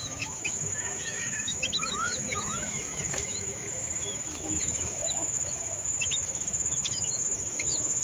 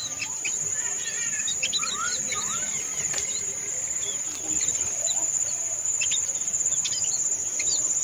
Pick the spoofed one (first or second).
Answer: first